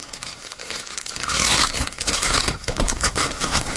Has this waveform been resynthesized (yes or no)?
yes